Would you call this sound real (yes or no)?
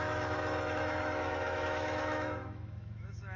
no